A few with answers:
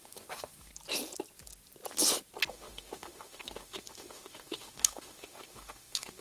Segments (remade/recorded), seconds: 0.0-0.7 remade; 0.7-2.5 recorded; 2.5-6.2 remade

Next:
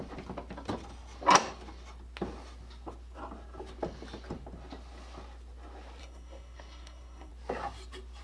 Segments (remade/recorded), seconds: 0.0-6.0 recorded; 6.0-7.3 remade; 7.3-8.2 recorded

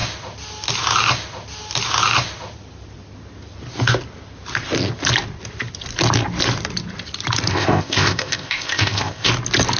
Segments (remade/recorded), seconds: 0.0-7.5 recorded; 7.5-9.3 remade; 9.3-9.8 recorded

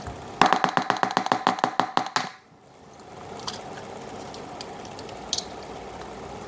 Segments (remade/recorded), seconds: 0.0-6.5 recorded

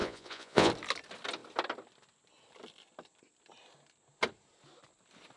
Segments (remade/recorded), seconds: 0.0-0.7 remade; 0.7-5.4 recorded